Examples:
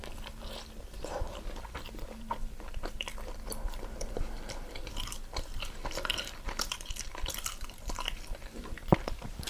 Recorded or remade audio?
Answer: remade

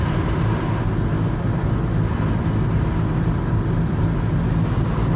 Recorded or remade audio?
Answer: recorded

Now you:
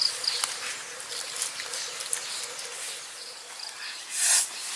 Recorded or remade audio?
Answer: recorded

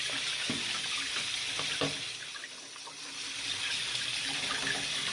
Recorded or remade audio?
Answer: recorded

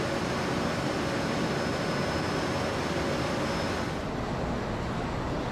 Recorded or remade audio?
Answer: recorded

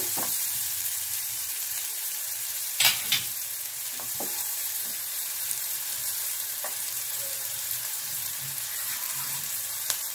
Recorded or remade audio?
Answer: remade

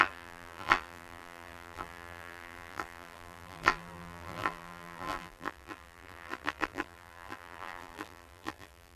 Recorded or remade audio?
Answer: remade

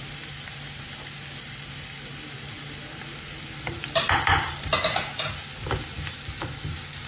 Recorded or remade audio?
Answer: recorded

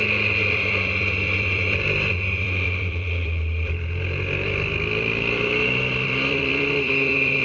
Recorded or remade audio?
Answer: remade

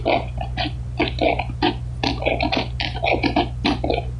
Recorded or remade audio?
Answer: recorded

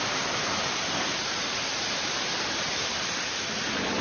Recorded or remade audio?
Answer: remade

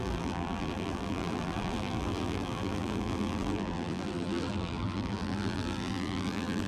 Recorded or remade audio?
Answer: remade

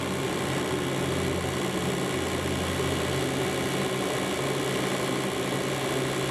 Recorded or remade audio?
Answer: recorded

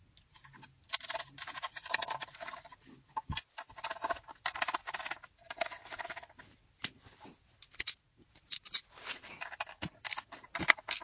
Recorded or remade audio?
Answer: recorded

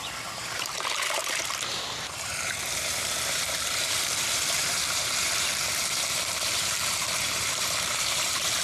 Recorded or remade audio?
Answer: remade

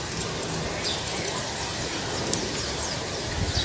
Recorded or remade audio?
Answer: recorded